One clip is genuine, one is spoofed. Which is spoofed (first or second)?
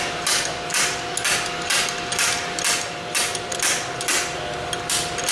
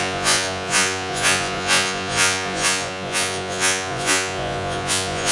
second